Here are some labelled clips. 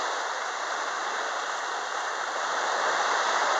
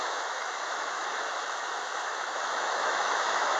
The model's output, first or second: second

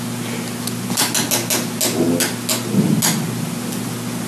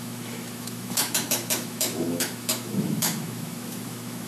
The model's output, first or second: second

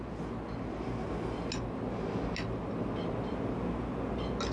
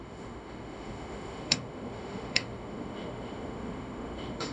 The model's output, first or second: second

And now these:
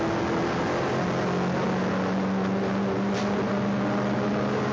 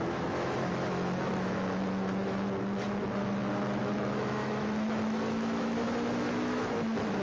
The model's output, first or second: second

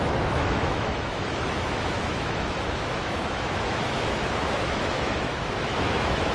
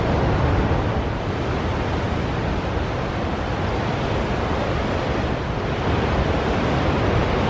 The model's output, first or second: first